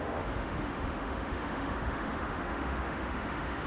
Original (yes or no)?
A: no